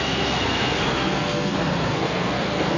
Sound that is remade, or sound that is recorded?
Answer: remade